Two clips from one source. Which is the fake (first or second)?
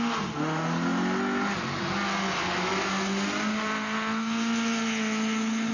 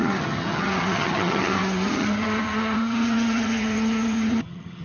second